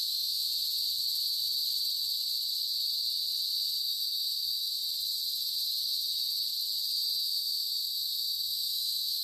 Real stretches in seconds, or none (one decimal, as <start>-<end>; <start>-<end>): 0.5-3.8; 4.8-7.2

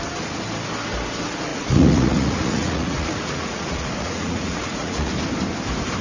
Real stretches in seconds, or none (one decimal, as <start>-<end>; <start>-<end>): 0.0-1.5; 5.1-6.0